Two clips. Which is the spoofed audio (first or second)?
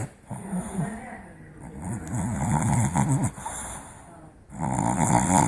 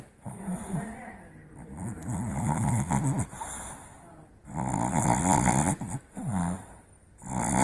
first